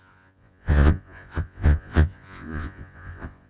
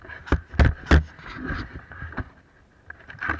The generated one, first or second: first